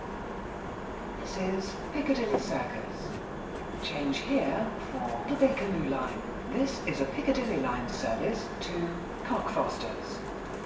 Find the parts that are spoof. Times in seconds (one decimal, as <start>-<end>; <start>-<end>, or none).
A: 2.3-3.2; 7.9-8.4